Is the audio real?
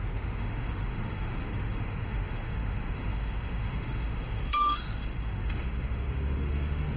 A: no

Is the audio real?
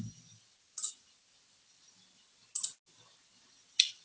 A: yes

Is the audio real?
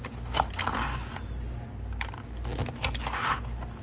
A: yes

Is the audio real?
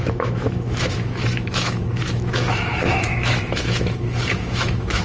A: no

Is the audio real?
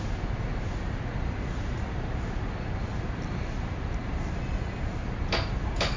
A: yes